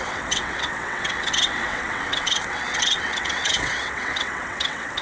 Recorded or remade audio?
remade